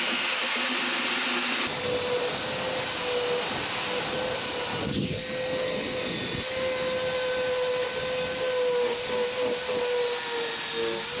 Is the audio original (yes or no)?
yes